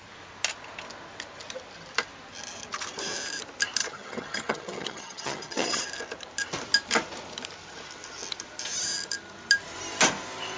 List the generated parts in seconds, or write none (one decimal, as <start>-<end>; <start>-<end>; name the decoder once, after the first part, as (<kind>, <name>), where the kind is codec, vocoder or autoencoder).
3.8-5.8 (vocoder, HiFi-GAN)